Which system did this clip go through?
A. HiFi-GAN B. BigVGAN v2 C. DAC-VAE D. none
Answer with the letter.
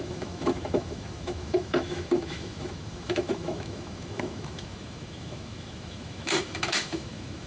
C